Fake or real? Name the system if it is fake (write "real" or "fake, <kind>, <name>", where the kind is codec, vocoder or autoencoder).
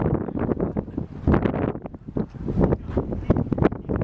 real